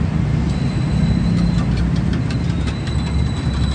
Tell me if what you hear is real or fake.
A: real